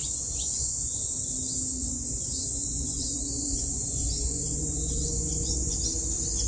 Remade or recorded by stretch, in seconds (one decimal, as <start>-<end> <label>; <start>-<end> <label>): 0.0-1.1 remade; 1.1-1.8 recorded; 1.8-5.7 remade; 5.7-6.5 recorded